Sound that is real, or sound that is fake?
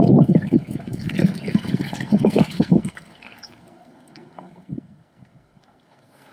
fake